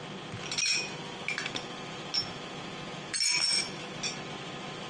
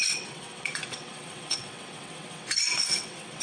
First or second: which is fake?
second